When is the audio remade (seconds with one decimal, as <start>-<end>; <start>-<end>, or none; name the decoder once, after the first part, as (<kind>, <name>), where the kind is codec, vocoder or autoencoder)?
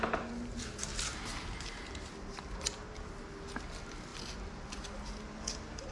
none